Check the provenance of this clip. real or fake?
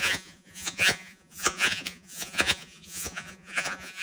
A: fake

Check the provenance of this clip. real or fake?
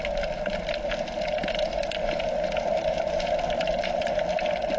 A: real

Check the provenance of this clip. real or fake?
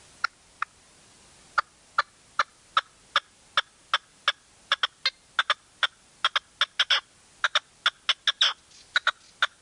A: real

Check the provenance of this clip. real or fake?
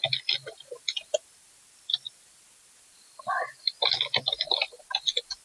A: real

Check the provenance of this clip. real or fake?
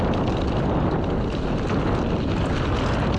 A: real